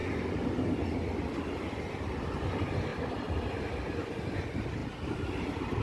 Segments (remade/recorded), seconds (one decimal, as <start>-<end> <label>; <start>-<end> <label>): 0.0-5.8 recorded